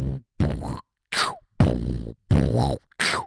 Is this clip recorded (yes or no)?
yes